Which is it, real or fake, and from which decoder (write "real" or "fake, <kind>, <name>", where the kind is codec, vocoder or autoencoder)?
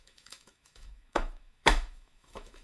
fake, autoencoder, DAC-VAE